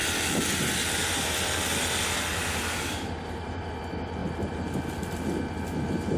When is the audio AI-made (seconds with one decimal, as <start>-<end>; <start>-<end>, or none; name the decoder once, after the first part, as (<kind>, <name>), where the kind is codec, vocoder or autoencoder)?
2.4-3.6 (vocoder, BigVGAN v2)